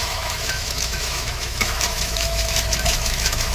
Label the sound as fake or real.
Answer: fake